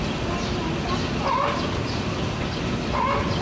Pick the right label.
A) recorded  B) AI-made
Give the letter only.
A